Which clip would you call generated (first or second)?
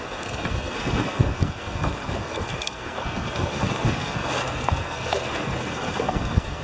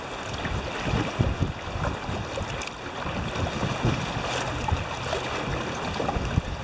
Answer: first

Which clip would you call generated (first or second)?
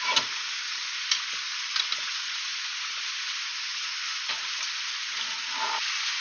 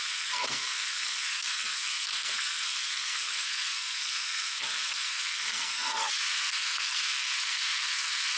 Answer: second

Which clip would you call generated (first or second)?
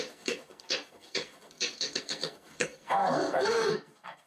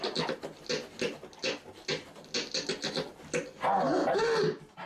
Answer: first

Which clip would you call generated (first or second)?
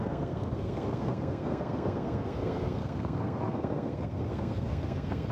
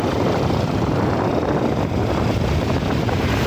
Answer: first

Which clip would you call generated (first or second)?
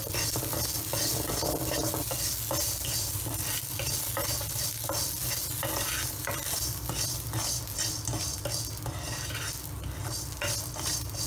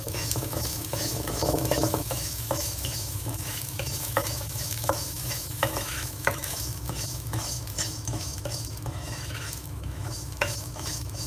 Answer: second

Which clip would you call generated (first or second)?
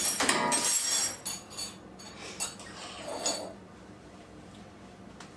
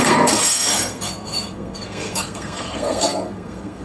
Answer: second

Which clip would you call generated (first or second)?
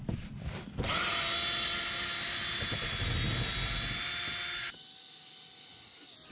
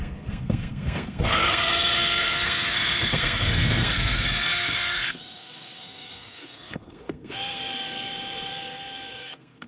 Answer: second